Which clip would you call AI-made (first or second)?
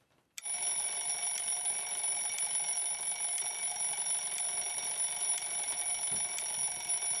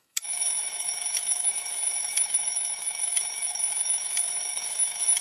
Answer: second